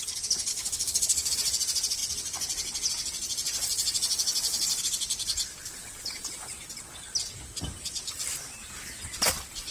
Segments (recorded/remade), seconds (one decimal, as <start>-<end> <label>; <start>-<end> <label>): 0.0-0.5 recorded; 0.5-1.3 remade; 1.3-9.7 recorded